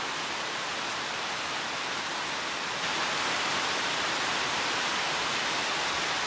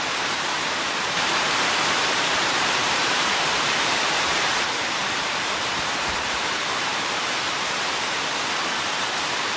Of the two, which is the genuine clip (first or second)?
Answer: first